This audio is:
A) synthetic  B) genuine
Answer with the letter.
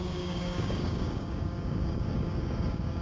A